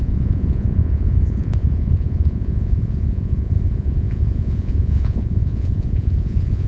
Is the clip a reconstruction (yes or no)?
yes